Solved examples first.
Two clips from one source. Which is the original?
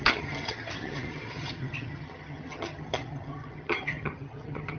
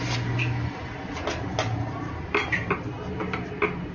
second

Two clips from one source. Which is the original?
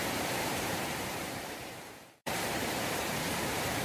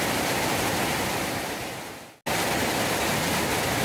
second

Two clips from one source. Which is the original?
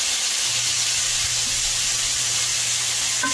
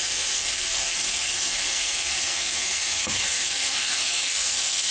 first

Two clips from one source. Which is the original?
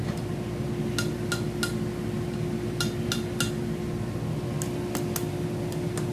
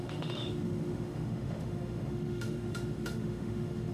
first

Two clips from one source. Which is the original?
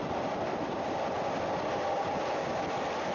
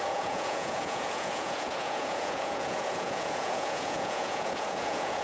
first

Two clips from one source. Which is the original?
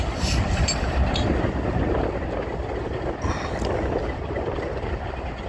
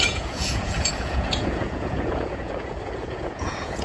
first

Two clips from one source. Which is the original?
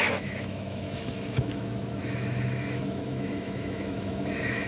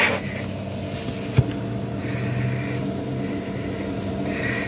second